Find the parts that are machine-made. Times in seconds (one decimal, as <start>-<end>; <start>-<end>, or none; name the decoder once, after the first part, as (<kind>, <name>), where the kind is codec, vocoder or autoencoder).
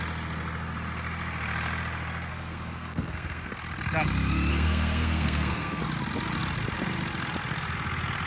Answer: 2.3-3.5 (codec, SNAC); 4.5-5.8